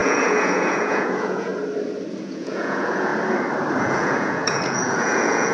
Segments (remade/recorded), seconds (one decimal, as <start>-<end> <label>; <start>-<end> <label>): 0.0-1.5 remade; 1.5-2.2 recorded; 2.2-3.1 remade; 3.1-3.8 recorded; 3.8-5.5 remade